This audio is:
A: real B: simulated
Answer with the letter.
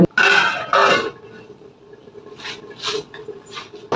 A